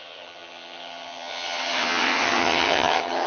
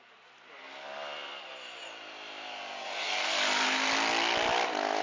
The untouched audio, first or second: second